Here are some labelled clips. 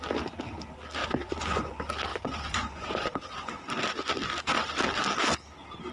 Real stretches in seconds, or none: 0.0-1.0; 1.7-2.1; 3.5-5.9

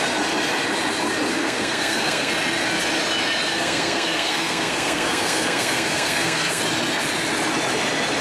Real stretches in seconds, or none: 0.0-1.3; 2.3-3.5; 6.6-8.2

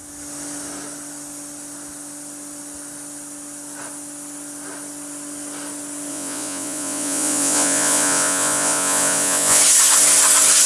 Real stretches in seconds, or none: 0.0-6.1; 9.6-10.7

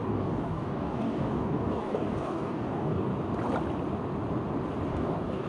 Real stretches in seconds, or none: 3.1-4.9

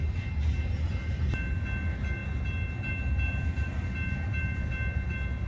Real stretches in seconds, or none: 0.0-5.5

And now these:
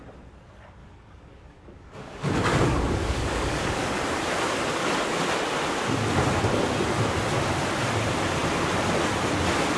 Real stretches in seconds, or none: 0.0-0.8; 4.0-9.8